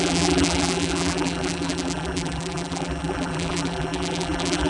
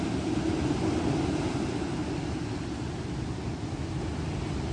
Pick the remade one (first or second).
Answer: first